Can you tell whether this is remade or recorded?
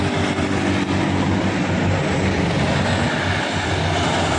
recorded